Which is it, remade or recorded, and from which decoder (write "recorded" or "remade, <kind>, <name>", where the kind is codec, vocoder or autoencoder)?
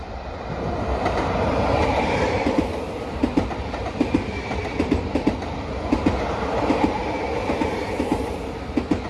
recorded